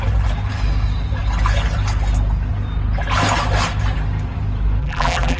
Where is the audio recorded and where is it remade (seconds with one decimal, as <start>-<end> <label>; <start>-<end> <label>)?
0.0-4.8 recorded; 4.8-5.4 remade